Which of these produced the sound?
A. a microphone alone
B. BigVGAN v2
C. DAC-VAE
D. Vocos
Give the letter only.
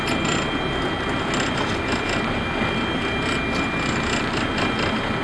A